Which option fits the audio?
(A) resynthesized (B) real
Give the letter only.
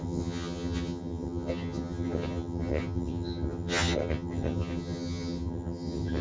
A